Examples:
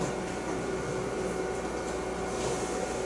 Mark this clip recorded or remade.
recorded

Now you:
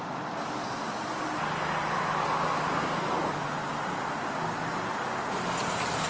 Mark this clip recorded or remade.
recorded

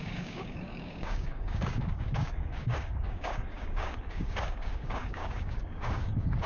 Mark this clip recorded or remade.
remade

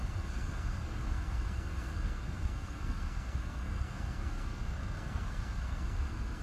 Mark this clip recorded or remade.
remade